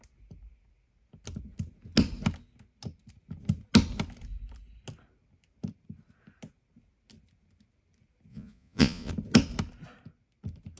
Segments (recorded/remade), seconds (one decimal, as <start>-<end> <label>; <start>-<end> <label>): 0.0-8.3 recorded; 8.3-9.1 remade; 9.1-10.8 recorded